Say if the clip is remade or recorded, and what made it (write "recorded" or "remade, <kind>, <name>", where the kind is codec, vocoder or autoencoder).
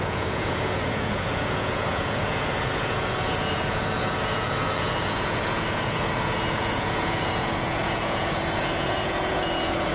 remade, vocoder, Vocos